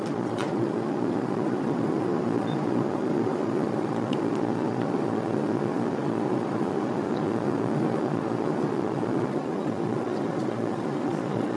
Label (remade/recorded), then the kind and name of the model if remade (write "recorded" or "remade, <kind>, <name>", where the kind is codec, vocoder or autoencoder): remade, vocoder, Vocos